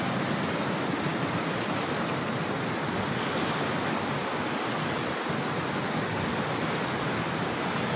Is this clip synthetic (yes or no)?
no